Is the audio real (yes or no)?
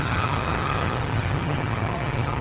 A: no